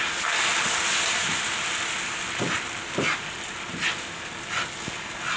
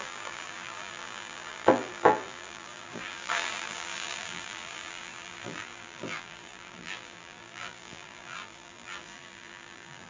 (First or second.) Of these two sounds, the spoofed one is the second